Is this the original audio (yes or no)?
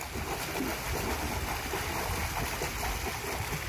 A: yes